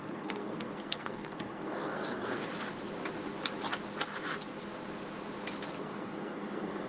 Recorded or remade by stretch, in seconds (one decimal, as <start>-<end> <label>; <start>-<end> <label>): 0.0-2.5 remade; 2.5-5.8 recorded; 5.8-6.9 remade